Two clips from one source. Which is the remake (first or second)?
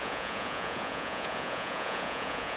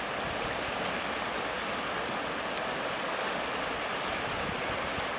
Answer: first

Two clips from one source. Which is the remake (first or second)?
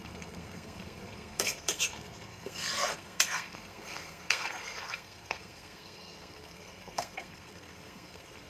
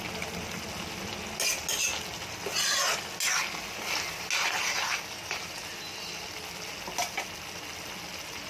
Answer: first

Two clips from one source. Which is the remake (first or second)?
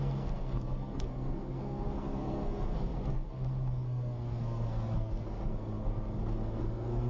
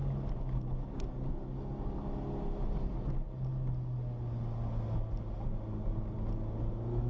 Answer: first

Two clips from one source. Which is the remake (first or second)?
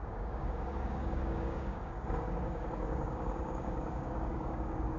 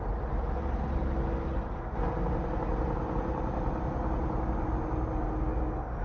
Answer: first